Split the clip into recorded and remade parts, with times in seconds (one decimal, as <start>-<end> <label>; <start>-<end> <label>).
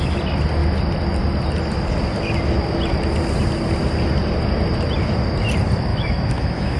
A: 0.0-5.9 recorded; 5.9-6.8 remade